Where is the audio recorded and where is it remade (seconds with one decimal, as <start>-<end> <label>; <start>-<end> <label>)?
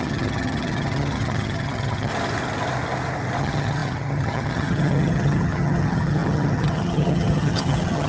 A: 0.0-2.1 remade; 2.1-3.4 recorded; 3.4-8.1 remade